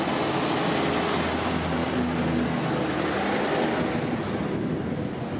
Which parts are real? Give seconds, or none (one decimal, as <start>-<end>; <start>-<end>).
0.0-5.4